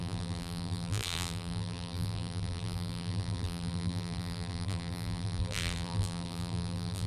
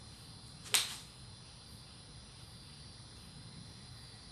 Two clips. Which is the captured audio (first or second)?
second